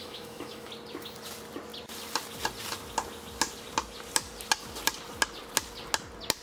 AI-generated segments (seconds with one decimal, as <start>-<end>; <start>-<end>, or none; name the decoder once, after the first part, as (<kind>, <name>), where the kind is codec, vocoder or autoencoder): 0.0-0.7 (autoencoder, DAC-VAE)

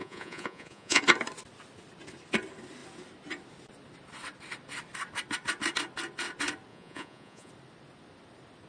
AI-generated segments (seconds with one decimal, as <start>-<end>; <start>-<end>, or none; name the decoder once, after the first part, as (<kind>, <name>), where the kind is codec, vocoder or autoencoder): 0.0-1.0 (vocoder, Vocos); 6.7-7.5

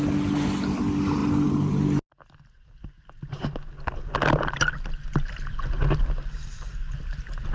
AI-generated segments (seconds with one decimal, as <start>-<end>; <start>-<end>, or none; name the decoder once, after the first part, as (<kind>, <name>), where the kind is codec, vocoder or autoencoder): none

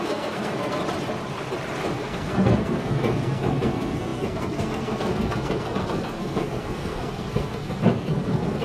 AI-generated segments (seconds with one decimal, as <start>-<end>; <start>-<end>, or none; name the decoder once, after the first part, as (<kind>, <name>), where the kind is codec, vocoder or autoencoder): 0.0-0.8 (codec, SNAC); 2.0-8.6

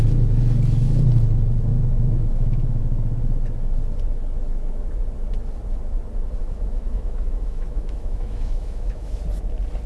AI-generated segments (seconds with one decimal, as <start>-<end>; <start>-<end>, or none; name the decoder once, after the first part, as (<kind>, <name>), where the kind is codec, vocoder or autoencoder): 1.7-2.8 (autoencoder, DAC-VAE); 6.4-9.2

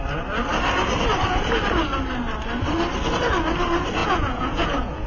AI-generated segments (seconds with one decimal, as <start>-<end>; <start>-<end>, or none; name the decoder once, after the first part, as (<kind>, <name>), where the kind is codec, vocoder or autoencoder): 4.0-5.1 (vocoder, Vocos)